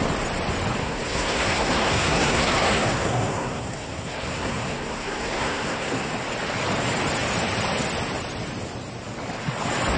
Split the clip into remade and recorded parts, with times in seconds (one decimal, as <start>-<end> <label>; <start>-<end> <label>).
0.0-0.8 recorded; 0.8-6.1 remade; 6.1-10.0 recorded